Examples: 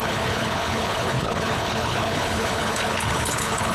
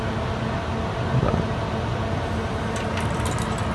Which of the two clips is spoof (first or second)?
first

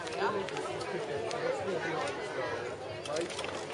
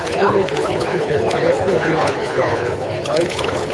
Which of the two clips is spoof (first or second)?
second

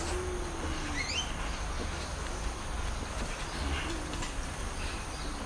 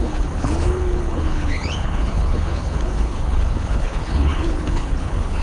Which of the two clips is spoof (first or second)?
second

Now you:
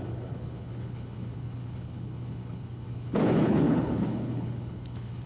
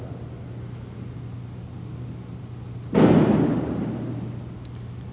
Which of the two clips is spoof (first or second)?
first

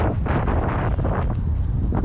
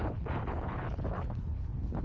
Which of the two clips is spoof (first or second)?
second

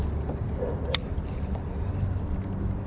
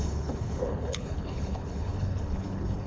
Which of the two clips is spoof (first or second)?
second